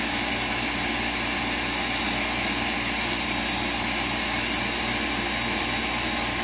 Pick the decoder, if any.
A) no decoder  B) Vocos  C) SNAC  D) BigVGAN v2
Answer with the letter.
A